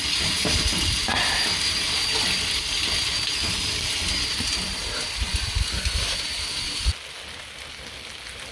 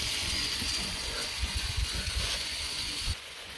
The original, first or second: first